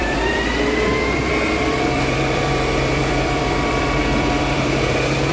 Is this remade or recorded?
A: remade